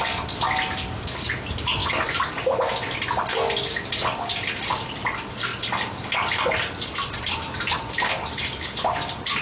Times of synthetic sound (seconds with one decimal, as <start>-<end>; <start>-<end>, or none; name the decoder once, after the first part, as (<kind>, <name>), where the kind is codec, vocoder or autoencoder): none